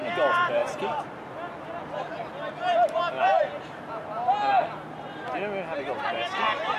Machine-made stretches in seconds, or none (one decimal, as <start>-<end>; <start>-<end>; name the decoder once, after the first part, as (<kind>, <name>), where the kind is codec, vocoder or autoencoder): none